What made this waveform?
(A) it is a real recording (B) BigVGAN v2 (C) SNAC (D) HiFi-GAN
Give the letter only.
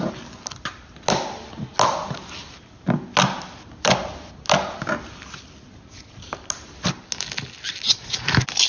A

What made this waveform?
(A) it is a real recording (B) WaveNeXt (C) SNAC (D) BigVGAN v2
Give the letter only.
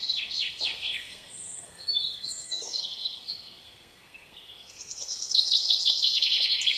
C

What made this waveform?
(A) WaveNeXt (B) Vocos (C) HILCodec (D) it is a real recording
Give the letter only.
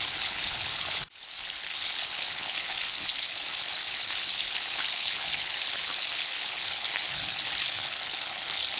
C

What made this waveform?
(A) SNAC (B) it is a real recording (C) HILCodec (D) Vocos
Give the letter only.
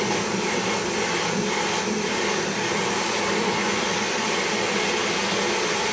B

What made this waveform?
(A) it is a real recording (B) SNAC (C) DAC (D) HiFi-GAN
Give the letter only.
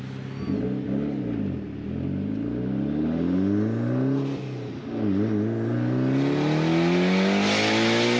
A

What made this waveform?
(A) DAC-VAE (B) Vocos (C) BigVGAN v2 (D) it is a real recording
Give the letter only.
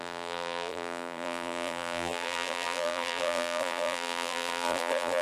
C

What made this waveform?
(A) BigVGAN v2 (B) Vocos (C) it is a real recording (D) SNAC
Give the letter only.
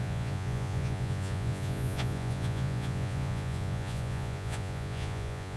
B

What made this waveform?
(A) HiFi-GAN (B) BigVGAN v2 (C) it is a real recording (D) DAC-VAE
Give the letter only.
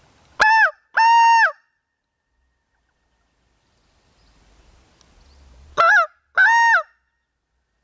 C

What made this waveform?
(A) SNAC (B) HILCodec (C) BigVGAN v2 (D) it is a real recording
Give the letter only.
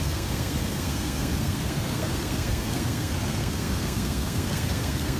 A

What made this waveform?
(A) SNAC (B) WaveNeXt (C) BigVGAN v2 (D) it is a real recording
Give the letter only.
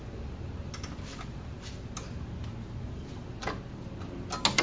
D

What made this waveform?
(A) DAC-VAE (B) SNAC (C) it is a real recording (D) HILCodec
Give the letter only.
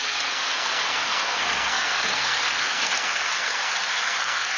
B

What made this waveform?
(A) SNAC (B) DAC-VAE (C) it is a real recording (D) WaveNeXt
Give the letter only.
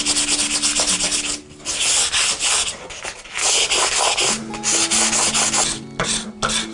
C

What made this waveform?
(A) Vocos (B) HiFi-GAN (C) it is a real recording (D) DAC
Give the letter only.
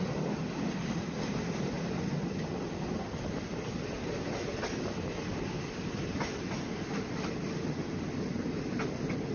C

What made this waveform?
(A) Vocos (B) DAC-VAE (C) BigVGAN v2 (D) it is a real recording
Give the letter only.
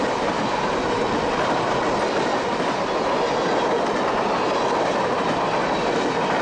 D